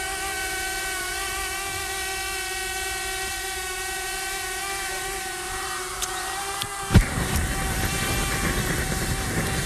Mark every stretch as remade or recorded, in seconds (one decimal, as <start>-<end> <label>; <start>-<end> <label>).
0.0-2.0 remade; 2.0-3.3 recorded; 3.3-9.7 remade